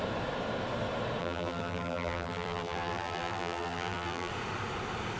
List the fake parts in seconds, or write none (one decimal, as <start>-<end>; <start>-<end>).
1.2-4.3